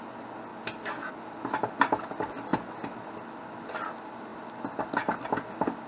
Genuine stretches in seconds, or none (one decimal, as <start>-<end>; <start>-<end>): 0.0-5.9